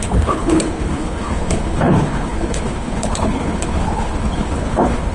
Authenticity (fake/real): fake